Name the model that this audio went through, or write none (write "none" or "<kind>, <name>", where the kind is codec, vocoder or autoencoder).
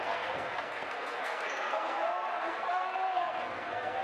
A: codec, SNAC